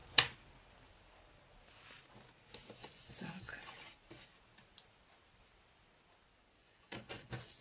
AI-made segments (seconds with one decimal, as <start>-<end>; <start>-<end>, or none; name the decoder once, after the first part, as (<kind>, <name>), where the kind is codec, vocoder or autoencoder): 2.8-3.6 (vocoder, Vocos); 6.6-7.6